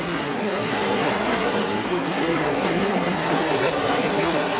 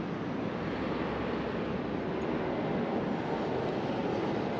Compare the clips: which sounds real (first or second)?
second